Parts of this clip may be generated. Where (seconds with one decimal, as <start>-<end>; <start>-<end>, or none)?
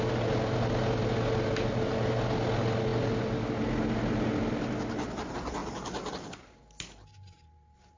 none